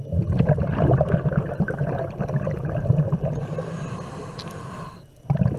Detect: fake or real real